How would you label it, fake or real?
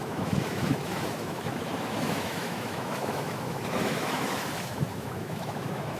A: fake